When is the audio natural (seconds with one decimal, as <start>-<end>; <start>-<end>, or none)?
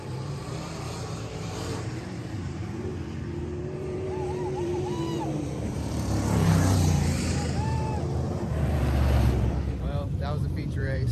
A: none